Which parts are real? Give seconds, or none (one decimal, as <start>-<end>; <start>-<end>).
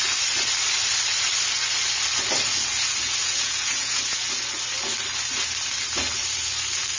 0.0-3.2; 4.3-7.0